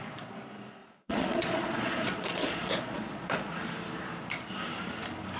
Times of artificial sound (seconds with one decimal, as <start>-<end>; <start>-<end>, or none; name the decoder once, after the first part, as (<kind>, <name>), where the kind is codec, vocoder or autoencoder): 0.8-3.5 (vocoder, Vocos)